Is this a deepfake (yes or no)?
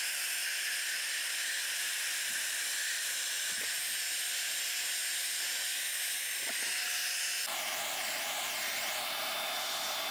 no